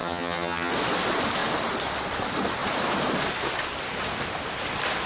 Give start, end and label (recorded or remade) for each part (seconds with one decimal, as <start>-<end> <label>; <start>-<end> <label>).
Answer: 0.0-0.7 remade; 0.7-5.1 recorded